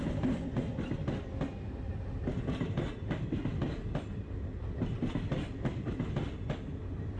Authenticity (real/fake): real